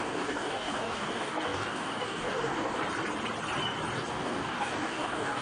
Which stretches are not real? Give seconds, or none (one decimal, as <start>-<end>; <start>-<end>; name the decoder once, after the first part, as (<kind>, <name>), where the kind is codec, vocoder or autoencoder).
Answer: 0.0-2.8 (codec, DAC); 4.1-5.4